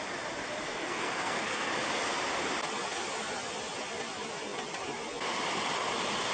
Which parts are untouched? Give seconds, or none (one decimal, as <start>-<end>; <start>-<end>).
0.0-0.6; 1.7-6.3